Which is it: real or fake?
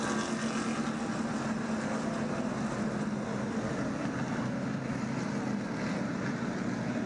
real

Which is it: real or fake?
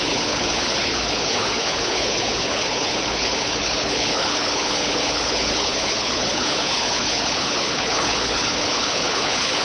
fake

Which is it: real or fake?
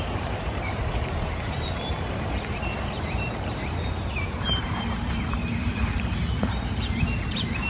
fake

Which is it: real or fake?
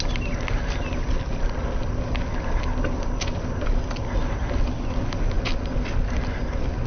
real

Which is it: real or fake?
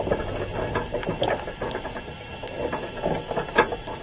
real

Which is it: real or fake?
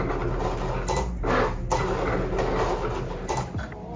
real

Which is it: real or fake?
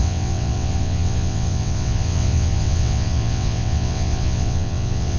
fake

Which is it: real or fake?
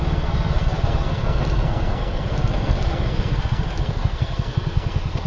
fake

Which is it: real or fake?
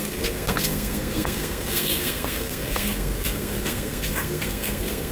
fake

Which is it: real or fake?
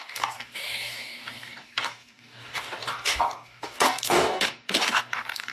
fake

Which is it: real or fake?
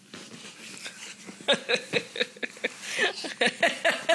real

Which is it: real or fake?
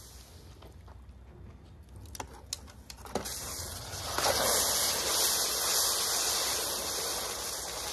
real